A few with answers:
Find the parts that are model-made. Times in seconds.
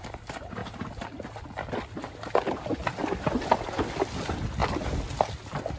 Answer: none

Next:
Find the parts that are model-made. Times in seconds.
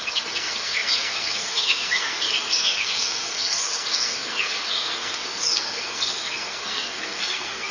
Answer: 0.0-7.7 (codec, SNAC)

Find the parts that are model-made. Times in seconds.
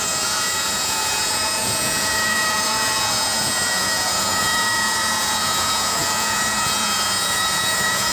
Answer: 0.0-8.1 (vocoder, Vocos)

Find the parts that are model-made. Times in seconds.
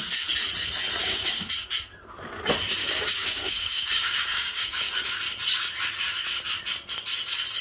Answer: 1.0-1.5 (codec, DAC); 2.8-5.1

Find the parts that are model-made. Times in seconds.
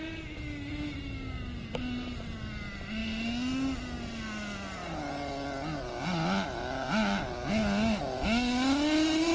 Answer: none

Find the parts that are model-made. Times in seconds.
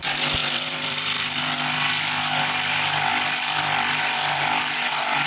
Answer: 0.4-1.9 (vocoder, BigVGAN v2); 3.1-5.3